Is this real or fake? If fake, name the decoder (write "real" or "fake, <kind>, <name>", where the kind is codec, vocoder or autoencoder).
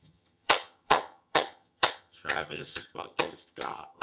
fake, vocoder, HiFi-GAN